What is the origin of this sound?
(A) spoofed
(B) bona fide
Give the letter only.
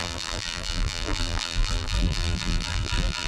A